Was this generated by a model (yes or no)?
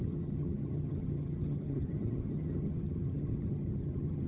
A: yes